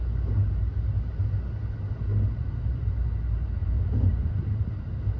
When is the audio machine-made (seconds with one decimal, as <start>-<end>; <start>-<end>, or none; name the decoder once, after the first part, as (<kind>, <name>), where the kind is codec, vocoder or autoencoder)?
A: 0.4-1.2 (vocoder, BigVGAN v2); 2.1-2.9; 3.6-4.6